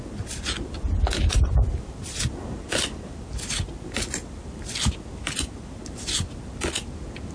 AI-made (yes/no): no